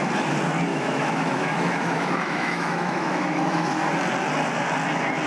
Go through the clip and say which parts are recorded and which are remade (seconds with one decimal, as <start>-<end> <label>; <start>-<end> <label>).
0.0-0.7 recorded; 0.7-3.9 remade; 3.9-5.3 recorded